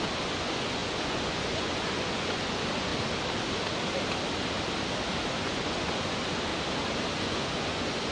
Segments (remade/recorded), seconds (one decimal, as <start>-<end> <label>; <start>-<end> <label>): 0.0-2.9 remade; 2.9-5.3 recorded; 5.3-6.5 remade; 6.5-7.2 recorded; 7.2-8.1 remade